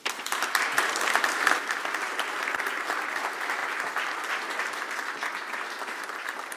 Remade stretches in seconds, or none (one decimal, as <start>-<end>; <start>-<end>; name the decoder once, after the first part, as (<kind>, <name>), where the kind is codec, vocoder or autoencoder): none